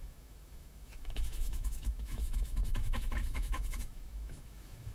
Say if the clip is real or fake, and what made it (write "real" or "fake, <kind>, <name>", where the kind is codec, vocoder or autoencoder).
fake, autoencoder, DAC-VAE